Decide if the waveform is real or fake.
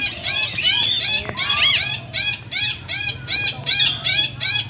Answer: real